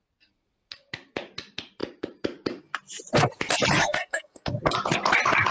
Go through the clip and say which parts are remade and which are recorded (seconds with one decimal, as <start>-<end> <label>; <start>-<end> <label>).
0.0-3.8 recorded; 3.8-4.5 remade; 4.5-5.5 recorded